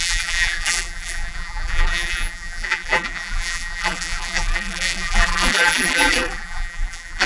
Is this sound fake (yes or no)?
yes